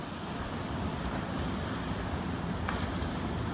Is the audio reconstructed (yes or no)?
no